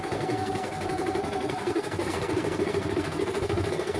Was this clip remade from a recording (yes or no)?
yes